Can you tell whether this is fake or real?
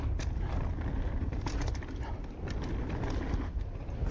fake